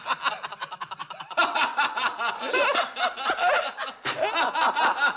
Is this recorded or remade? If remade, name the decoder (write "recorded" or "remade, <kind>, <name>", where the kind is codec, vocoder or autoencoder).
recorded